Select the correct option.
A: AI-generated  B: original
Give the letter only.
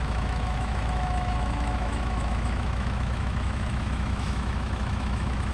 A